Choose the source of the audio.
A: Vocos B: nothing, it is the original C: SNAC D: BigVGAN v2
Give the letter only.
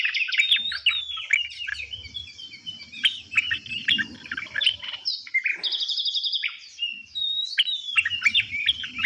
B